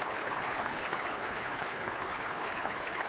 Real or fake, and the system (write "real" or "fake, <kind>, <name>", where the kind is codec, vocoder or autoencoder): fake, codec, HILCodec